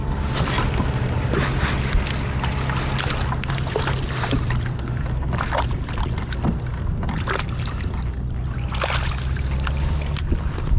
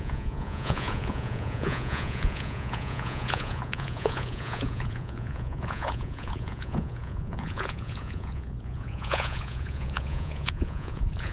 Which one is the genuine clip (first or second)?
first